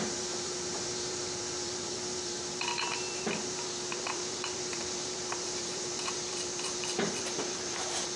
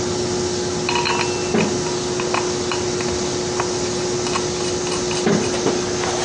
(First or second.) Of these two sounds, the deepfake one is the first